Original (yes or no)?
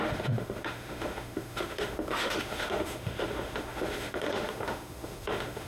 no